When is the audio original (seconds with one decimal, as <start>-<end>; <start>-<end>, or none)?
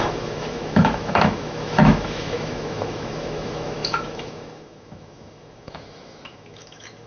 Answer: none